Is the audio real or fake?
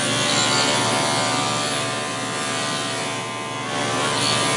real